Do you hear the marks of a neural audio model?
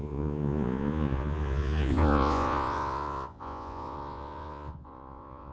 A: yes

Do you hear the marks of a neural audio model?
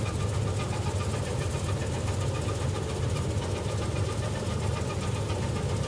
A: no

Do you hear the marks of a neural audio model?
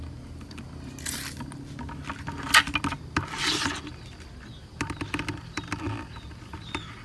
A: no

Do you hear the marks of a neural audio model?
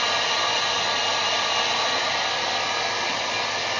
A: no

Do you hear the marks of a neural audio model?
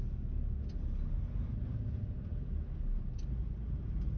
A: no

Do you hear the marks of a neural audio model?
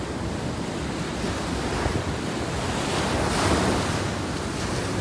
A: no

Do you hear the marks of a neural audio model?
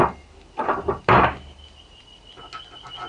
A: no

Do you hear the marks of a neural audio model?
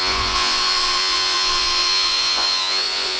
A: yes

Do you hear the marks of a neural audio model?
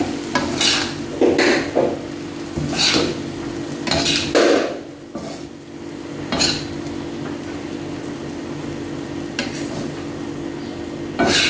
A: no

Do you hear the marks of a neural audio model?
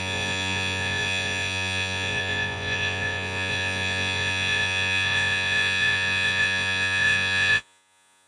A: yes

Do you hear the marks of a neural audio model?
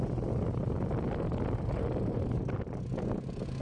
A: no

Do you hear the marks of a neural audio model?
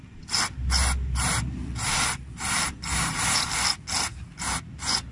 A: no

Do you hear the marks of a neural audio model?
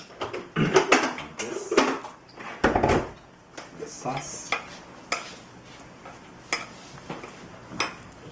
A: no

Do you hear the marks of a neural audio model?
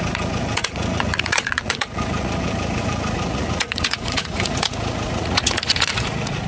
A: yes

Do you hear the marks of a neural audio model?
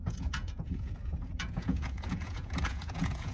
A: yes